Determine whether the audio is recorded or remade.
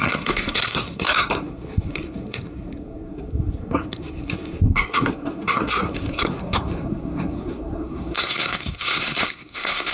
remade